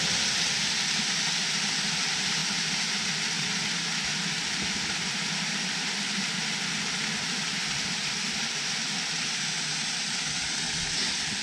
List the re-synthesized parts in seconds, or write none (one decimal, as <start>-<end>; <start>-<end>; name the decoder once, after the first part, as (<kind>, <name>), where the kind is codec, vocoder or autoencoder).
0.0-2.4 (vocoder, BigVGAN v2); 4.4-6.4; 7.2-9.7; 10.7-11.4